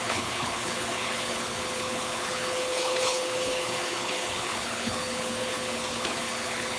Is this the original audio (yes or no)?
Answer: no